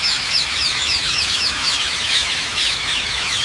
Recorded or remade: remade